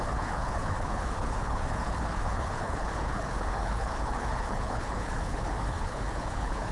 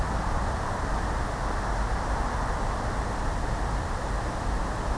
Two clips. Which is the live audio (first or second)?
second